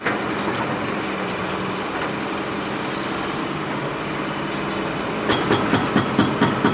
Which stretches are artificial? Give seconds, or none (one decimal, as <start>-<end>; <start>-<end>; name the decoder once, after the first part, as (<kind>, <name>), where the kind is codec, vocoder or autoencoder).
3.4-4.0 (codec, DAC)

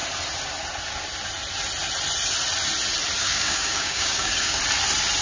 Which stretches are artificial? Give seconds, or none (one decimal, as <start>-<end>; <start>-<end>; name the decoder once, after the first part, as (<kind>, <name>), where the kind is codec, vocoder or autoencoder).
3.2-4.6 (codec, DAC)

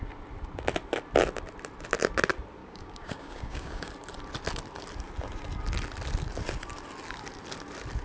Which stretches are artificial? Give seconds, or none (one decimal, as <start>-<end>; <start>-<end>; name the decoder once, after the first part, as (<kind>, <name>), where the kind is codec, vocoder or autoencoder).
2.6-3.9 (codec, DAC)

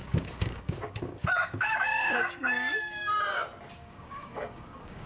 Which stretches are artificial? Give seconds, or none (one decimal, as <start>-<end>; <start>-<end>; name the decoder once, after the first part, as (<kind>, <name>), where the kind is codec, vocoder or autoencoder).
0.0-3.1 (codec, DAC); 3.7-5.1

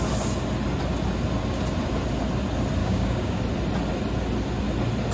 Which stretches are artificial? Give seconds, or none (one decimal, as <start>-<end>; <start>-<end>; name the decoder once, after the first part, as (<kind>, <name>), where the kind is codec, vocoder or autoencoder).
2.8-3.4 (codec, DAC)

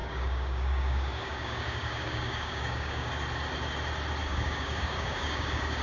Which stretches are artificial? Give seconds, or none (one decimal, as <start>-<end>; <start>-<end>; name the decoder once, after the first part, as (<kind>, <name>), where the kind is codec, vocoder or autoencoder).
0.0-3.1 (codec, DAC); 4.2-5.8

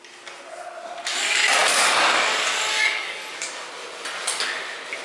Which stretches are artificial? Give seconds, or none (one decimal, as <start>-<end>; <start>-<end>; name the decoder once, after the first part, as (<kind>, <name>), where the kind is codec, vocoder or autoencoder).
1.6-3.7 (codec, DAC)